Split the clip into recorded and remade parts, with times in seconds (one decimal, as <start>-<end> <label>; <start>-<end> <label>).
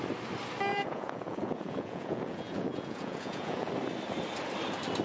0.0-0.7 recorded; 0.7-3.7 remade; 3.7-5.0 recorded